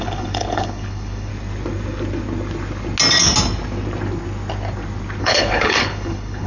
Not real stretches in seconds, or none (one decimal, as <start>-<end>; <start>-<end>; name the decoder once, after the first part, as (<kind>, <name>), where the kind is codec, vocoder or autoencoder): 0.0-1.3 (codec, HILCodec); 5.2-6.5